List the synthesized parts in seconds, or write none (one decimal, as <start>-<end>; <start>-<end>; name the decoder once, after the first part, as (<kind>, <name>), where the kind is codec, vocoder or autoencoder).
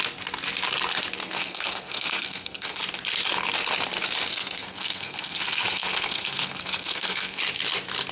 1.2-2.8 (codec, SNAC); 4.3-7.4